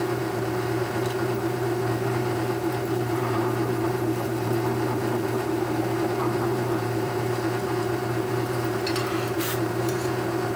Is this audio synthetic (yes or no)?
yes